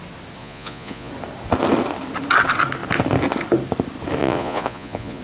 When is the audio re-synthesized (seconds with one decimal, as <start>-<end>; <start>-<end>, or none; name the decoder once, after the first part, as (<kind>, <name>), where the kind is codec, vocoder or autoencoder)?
0.4-1.1 (vocoder, Vocos); 4.2-5.2